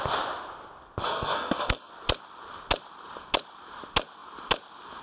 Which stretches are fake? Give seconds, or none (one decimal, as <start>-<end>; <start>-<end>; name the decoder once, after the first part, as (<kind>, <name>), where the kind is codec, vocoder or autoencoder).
1.0-1.9 (codec, SNAC)